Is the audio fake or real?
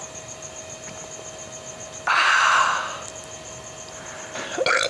real